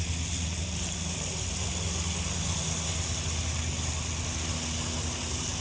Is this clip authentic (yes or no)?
yes